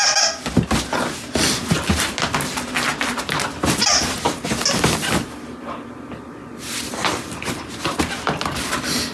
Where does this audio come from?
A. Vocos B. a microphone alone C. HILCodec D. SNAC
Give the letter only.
B